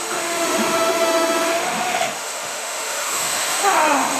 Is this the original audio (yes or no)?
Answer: no